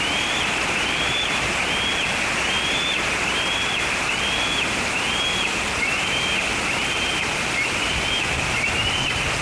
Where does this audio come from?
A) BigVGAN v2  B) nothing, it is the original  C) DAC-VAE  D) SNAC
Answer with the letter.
A